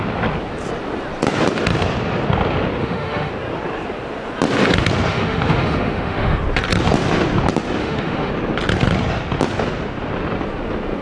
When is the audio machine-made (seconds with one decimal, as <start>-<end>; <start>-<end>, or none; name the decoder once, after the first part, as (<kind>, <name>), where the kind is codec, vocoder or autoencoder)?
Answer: 2.8-3.3 (autoencoder, DAC-VAE); 5.1-6.4; 7.8-8.3